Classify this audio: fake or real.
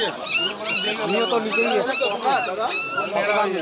real